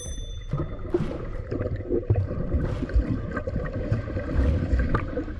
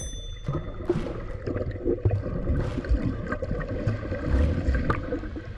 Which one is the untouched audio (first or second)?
second